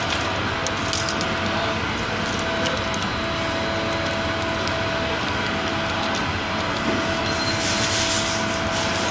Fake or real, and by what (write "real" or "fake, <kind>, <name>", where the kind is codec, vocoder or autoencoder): real